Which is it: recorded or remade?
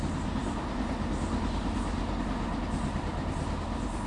recorded